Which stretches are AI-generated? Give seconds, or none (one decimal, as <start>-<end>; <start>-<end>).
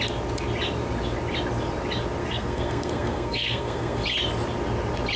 2.2-4.0